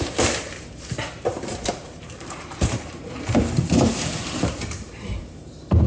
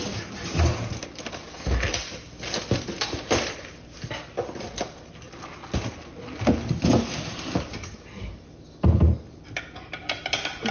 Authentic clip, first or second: second